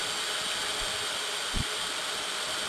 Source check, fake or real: real